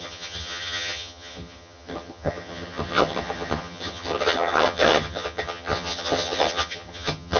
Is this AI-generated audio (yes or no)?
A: yes